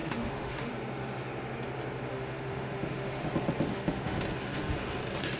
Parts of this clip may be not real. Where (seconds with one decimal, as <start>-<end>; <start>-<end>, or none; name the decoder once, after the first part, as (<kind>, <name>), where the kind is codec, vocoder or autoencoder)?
0.0-0.7 (autoencoder, DAC-VAE); 2.1-3.3; 3.7-4.2